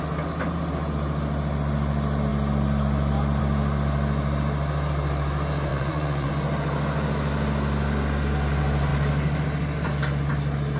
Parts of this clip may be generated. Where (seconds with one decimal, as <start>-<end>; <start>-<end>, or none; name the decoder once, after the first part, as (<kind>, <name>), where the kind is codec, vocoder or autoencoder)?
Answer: 5.7-6.3 (vocoder, Vocos)